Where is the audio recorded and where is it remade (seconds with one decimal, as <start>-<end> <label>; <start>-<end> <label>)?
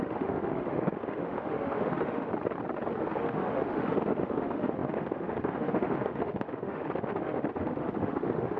0.0-2.3 remade; 2.3-3.0 recorded; 3.0-8.6 remade